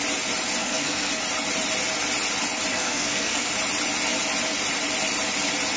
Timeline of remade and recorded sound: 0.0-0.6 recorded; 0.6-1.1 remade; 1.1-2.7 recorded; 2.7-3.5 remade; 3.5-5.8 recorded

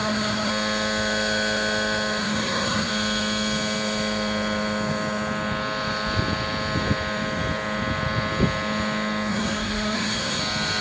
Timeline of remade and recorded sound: 0.0-0.5 remade; 0.5-2.2 recorded; 2.2-2.9 remade; 2.9-9.3 recorded; 9.3-10.4 remade; 10.4-10.8 recorded

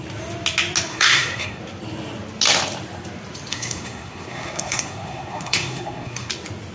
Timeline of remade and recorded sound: 0.0-0.9 recorded; 0.9-1.6 remade; 1.6-3.5 recorded; 3.5-6.3 remade; 6.3-6.7 recorded

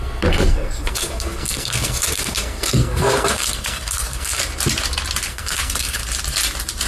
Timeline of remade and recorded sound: 0.0-4.4 remade; 4.4-5.3 recorded; 5.3-6.0 remade; 6.0-6.9 recorded